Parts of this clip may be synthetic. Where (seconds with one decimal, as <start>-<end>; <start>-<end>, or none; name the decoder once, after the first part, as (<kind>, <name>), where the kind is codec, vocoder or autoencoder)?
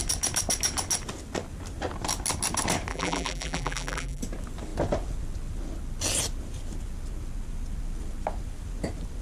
2.9-4.2 (vocoder, BigVGAN v2)